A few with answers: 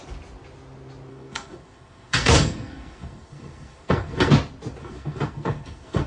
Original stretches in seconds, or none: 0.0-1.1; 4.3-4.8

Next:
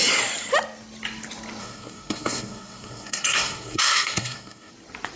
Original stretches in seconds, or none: 0.0-1.6; 4.7-5.2

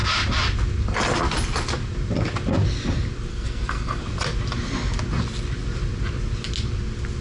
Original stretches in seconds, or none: 0.0-3.3; 4.0-7.2